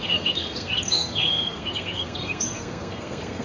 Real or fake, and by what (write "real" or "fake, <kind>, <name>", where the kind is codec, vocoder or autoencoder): fake, codec, SNAC